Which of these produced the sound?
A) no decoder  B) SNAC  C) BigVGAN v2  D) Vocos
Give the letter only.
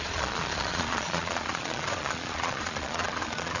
D